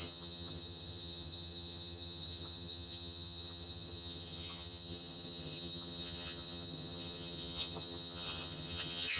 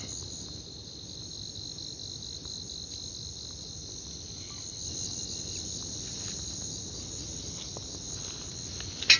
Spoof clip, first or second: first